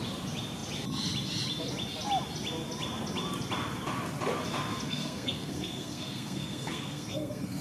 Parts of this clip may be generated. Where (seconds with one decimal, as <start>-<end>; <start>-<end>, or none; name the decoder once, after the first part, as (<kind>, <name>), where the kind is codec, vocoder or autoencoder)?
4.9-7.6 (codec, SNAC)